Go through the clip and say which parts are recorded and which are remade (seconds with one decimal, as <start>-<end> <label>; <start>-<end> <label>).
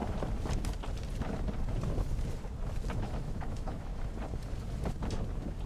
0.0-3.0 recorded; 3.0-3.9 remade; 3.9-5.7 recorded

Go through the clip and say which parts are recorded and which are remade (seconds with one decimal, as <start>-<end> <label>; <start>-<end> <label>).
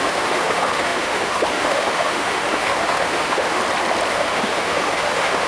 0.0-3.6 remade; 3.6-4.1 recorded; 4.1-5.5 remade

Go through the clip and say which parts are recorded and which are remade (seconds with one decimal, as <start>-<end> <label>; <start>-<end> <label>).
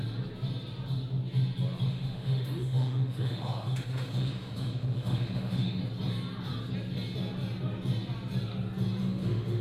0.0-1.9 recorded; 1.9-5.8 remade; 5.8-9.0 recorded; 9.0-9.6 remade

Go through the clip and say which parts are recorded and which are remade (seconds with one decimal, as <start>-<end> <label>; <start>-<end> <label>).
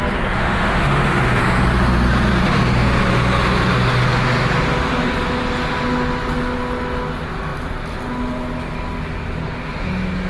0.0-0.4 recorded; 0.4-1.4 remade; 1.4-10.3 recorded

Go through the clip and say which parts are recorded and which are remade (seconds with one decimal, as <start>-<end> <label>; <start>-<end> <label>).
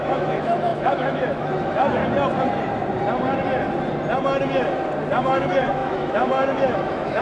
0.0-2.0 remade; 2.0-5.2 recorded; 5.2-7.2 remade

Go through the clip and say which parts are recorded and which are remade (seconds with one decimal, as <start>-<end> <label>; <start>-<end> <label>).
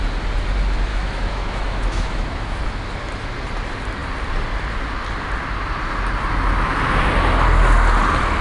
0.0-0.9 recorded; 0.9-2.6 remade; 2.6-8.4 recorded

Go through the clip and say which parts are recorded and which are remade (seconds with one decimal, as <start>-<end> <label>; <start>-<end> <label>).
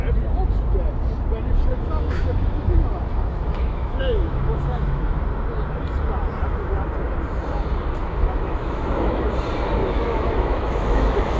0.0-1.7 recorded; 1.7-5.2 remade; 5.2-8.0 recorded; 8.0-9.3 remade; 9.3-9.8 recorded; 9.8-11.4 remade